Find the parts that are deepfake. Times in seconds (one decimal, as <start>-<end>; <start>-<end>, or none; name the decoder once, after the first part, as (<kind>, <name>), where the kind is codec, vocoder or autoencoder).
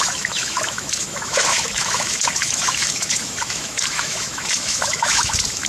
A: 0.0-5.7 (autoencoder, DAC-VAE)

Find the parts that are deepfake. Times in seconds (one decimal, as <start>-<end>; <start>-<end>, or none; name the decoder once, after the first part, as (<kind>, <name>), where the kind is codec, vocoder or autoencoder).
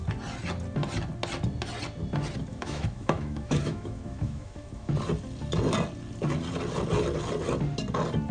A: 2.5-4.9 (autoencoder, DAC-VAE)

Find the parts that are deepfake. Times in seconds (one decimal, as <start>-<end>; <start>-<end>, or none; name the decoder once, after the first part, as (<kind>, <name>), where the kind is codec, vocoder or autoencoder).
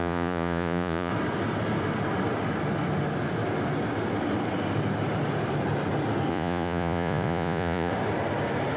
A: 0.0-1.1 (vocoder, Vocos); 6.3-7.9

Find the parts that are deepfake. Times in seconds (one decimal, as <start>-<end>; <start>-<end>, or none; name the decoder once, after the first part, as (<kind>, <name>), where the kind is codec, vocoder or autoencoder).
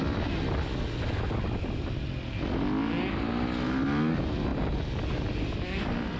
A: none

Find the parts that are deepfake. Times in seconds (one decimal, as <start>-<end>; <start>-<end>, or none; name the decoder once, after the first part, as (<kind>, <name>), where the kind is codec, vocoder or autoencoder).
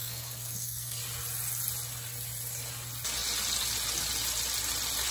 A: 0.0-1.0 (codec, SNAC)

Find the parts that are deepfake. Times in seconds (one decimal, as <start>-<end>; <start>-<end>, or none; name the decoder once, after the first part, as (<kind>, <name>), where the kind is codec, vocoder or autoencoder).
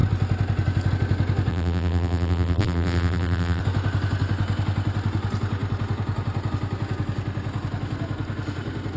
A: 1.5-3.6 (vocoder, BigVGAN v2)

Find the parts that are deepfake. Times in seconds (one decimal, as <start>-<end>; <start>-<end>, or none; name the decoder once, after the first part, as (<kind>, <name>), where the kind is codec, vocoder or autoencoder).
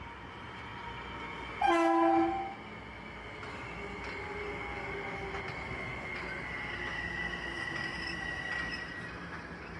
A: none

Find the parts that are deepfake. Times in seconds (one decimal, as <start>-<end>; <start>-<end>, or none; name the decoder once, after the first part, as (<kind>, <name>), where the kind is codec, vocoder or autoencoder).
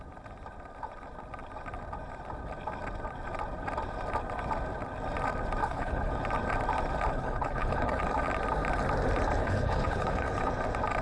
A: 5.6-6.1 (codec, HILCodec); 7.1-8.0; 9.4-10.5